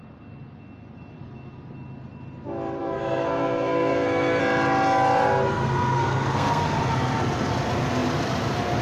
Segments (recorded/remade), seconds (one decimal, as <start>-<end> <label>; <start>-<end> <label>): 0.0-2.8 recorded; 2.8-4.4 remade; 4.4-5.5 recorded; 5.5-6.6 remade; 6.6-8.8 recorded